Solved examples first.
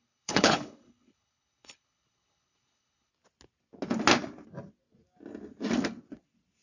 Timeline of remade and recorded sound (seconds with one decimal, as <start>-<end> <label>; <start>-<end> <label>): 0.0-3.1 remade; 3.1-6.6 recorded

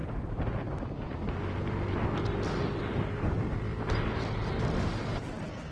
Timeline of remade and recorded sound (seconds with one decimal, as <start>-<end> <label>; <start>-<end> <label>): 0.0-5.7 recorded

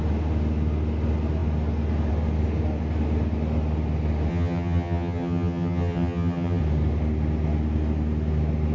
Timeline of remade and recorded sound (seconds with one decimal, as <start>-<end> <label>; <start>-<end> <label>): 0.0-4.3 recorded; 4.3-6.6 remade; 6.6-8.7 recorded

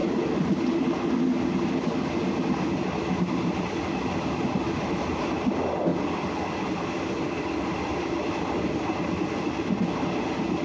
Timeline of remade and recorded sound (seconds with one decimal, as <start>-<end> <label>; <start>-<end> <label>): 0.0-10.6 recorded